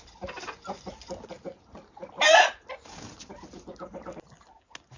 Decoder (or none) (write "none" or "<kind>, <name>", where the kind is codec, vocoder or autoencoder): none